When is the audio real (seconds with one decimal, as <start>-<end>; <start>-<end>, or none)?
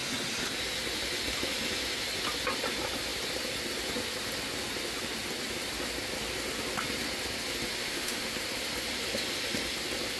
0.0-7.8; 8.3-10.2